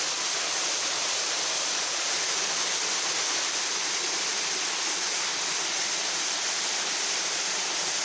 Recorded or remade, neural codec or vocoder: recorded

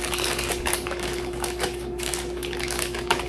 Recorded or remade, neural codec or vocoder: remade, codec, DAC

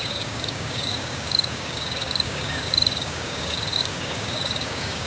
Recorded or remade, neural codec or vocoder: remade, codec, DAC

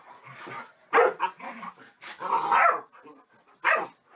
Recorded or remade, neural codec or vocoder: recorded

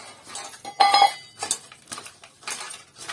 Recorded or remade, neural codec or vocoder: recorded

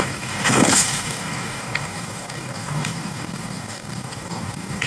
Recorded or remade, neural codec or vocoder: remade, codec, DAC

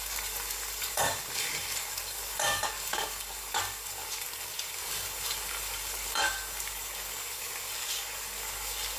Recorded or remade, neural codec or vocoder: remade, codec, DAC